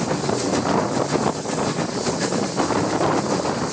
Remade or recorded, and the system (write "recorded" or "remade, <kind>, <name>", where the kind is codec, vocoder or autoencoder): recorded